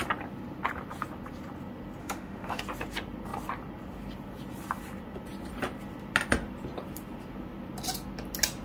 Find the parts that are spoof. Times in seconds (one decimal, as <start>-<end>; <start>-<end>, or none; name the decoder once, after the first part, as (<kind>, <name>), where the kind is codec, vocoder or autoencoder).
2.0-2.6 (autoencoder, DAC-VAE)